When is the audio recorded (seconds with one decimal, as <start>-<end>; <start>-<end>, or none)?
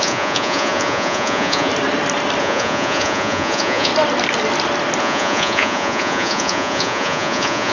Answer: 1.7-2.4; 3.9-5.0